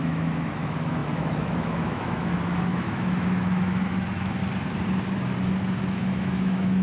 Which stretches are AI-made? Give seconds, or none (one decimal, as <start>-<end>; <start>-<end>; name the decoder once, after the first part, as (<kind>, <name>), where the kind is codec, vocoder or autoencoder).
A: 0.0-4.4 (autoencoder, DAC-VAE); 5.8-6.8